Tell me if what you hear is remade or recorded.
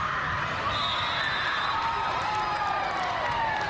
recorded